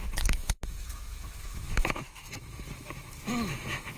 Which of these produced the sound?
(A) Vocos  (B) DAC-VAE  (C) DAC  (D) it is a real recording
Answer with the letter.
B